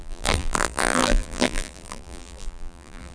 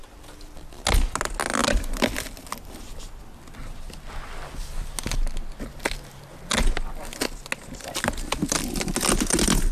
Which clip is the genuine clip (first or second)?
second